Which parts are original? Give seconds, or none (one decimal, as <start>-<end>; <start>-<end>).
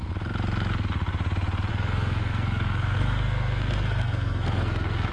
0.0-1.7